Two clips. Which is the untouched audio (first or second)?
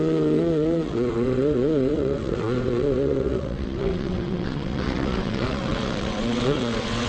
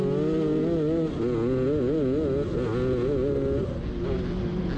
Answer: second